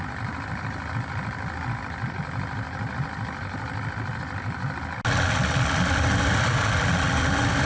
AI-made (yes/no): no